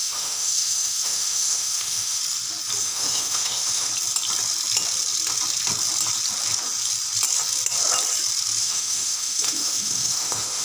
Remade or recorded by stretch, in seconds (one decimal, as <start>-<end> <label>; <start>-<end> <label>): 0.0-2.2 remade; 2.2-2.8 recorded; 2.8-3.9 remade; 3.9-8.6 recorded; 8.6-10.6 remade